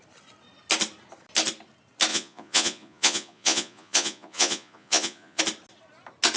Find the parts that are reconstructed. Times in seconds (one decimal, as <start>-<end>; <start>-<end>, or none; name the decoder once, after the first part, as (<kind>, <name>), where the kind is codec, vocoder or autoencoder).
2.1-5.4 (vocoder, Vocos)